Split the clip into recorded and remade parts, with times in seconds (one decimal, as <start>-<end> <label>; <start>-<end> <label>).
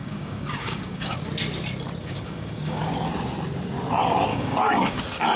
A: 0.0-1.2 remade; 1.2-2.0 recorded; 2.0-2.8 remade; 2.8-4.3 recorded; 4.3-5.0 remade; 5.0-5.4 recorded